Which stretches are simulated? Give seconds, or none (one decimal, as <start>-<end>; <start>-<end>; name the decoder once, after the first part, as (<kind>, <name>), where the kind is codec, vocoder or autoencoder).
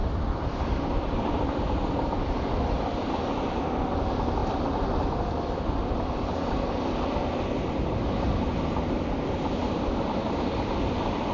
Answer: 0.0-3.0 (vocoder, BigVGAN v2); 4.4-6.8; 8.0-8.5; 9.6-10.6